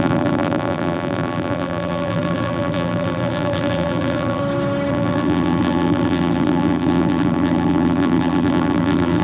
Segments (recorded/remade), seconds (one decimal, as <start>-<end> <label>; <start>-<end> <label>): 0.0-4.4 remade; 4.4-4.9 recorded; 4.9-9.2 remade